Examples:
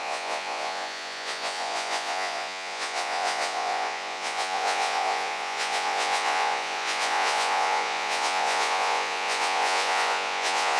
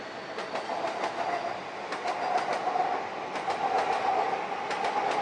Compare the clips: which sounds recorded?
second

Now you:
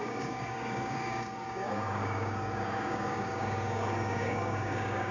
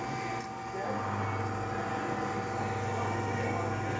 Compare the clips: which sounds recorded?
second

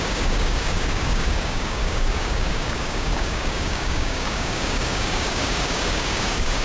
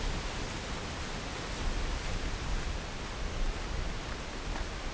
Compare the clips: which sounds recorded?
second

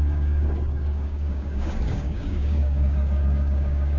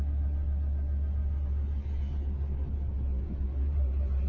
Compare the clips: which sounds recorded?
second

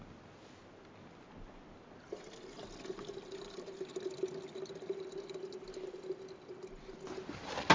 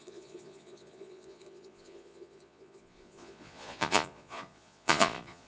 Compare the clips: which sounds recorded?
first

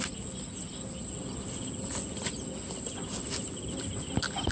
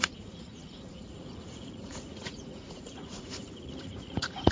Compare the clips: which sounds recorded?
first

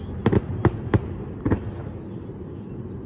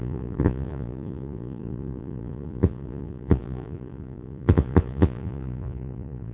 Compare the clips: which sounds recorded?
first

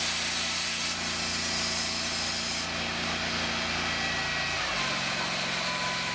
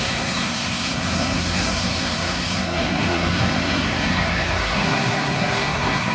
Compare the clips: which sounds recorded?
first